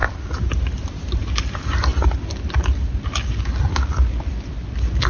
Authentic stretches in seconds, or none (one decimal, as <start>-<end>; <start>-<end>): 0.0-5.1